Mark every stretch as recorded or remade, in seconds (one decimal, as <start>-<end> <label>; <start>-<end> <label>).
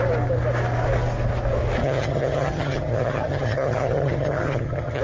0.0-1.8 recorded; 1.8-5.0 remade